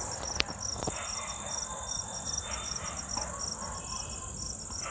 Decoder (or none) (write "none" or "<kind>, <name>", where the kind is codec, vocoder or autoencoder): vocoder, BigVGAN v2